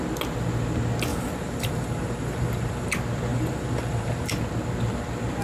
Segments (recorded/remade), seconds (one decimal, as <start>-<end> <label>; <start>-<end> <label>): 0.0-1.1 recorded; 1.1-2.9 remade; 2.9-3.3 recorded; 3.3-4.3 remade; 4.3-5.4 recorded